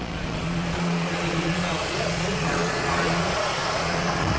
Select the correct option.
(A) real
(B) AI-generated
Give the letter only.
B